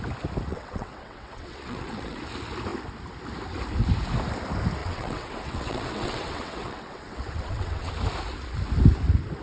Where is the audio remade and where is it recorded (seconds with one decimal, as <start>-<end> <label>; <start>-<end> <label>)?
0.0-0.5 recorded; 0.5-2.2 remade; 2.2-4.8 recorded; 4.8-7.9 remade; 7.9-9.4 recorded